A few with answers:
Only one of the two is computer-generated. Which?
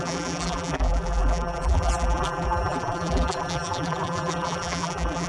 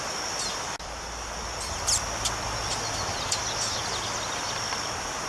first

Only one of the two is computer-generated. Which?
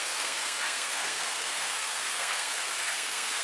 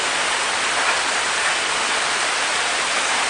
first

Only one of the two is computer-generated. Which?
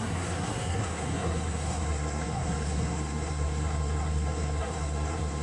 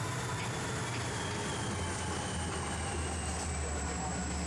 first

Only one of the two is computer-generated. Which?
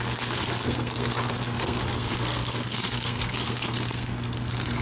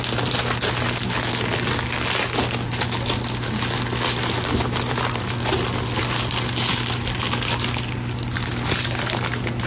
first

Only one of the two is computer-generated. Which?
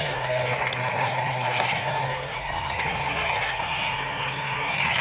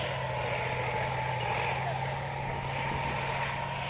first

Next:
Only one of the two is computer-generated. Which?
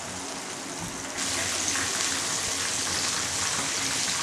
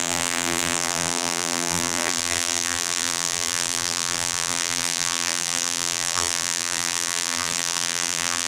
second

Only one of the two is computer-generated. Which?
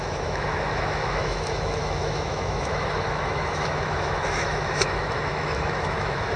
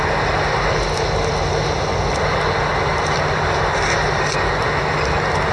first